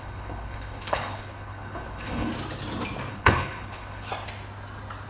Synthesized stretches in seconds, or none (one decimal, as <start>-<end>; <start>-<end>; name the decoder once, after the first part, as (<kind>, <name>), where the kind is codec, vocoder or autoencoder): 0.0-2.3 (codec, HILCodec); 3.1-4.1